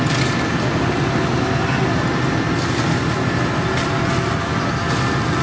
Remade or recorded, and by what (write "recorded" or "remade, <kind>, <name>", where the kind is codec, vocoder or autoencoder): recorded